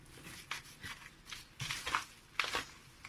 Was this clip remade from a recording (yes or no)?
no